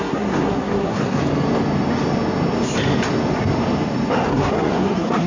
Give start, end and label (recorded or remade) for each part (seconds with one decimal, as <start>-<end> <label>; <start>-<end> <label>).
0.0-1.2 remade; 1.2-4.3 recorded; 4.3-5.3 remade